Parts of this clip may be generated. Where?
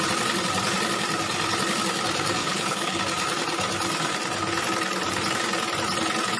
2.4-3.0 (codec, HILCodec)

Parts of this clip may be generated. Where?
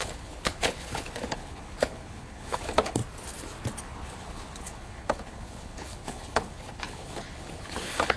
0.0-3.0 (codec, HILCodec); 3.8-8.2